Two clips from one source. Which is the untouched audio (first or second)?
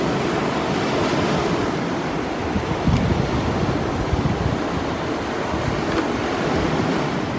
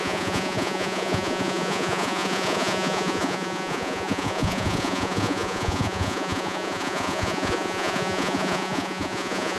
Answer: first